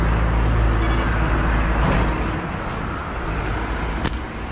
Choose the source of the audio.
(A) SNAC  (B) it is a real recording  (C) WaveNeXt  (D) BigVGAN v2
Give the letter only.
B